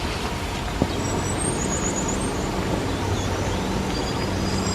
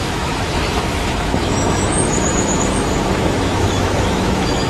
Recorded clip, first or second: first